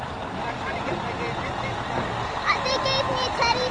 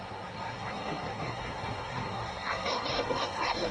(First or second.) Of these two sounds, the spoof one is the second